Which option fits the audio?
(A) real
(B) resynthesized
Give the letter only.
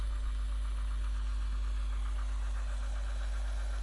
A